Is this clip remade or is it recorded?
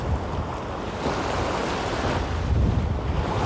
recorded